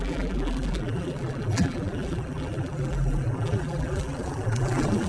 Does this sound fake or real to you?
fake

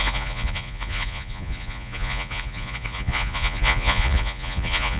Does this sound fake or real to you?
fake